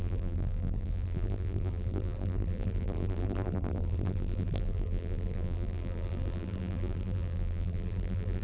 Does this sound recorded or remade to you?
remade